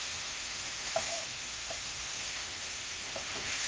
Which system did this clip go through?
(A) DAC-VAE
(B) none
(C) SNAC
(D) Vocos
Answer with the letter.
A